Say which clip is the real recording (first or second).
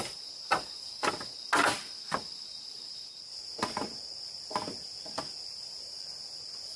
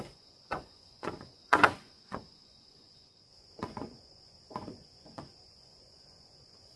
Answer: first